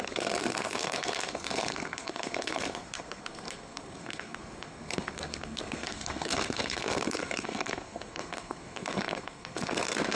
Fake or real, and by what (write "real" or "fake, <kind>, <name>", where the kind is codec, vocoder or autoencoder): fake, codec, SNAC